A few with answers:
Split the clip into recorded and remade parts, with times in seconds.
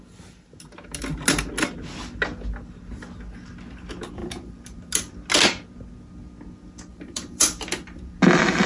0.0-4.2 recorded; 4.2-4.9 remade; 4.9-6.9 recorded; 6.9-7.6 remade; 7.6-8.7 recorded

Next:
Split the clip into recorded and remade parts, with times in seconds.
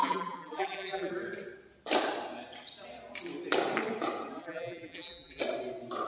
0.0-1.1 remade; 1.1-4.4 recorded; 4.4-5.4 remade; 5.4-6.1 recorded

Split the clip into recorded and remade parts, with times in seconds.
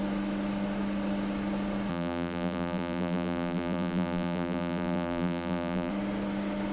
0.0-1.9 recorded; 1.9-5.9 remade; 5.9-6.7 recorded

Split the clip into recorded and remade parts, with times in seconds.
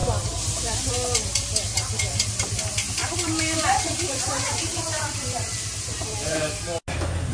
0.0-0.9 remade; 0.9-3.0 recorded; 3.0-6.6 remade; 6.6-7.3 recorded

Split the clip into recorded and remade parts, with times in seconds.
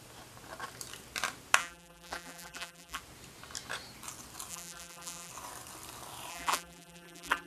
0.0-1.6 recorded; 1.6-3.0 remade; 3.0-4.5 recorded; 4.5-5.3 remade; 5.3-6.3 recorded; 6.3-7.5 remade